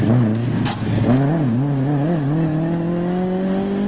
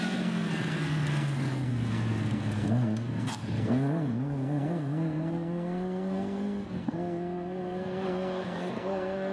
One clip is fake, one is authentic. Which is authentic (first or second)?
first